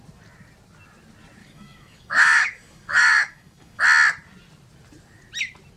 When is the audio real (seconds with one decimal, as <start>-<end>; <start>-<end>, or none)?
0.0-1.4; 3.8-5.8